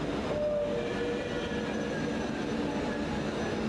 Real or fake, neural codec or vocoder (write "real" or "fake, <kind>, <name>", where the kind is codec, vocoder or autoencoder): real